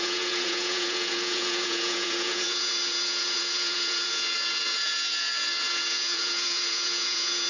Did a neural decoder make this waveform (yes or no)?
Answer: yes